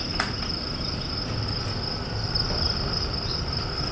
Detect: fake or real real